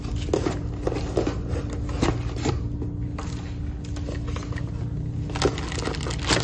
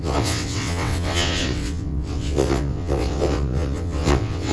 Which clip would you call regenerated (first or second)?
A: second